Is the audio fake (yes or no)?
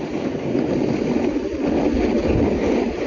no